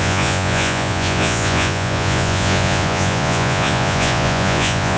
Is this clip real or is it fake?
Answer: fake